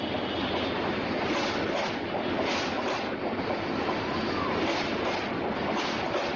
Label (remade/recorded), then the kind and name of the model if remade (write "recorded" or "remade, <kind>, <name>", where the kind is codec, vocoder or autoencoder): recorded